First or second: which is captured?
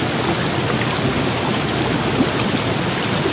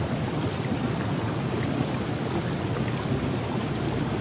first